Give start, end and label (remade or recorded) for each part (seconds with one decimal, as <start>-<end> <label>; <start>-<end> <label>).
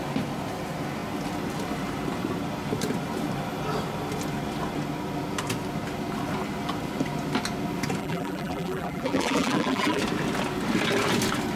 0.0-8.0 recorded; 8.0-10.0 remade; 10.0-11.6 recorded